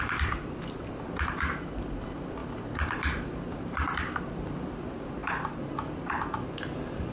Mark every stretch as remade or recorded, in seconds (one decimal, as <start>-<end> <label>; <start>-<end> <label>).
0.0-2.4 remade; 2.4-4.2 recorded; 4.2-7.1 remade